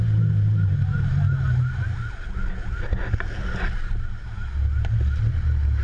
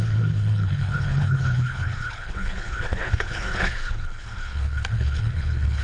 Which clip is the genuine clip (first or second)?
first